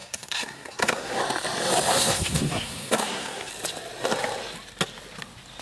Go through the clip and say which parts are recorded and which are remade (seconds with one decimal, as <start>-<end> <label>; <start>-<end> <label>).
0.0-1.2 remade; 1.2-1.9 recorded; 1.9-3.5 remade; 3.5-5.6 recorded